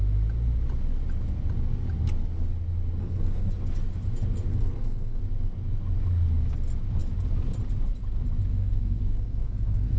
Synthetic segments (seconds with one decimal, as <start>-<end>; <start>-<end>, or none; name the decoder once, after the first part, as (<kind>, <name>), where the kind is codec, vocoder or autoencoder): 3.0-3.5 (codec, SNAC); 4.5-5.2; 8.5-10.0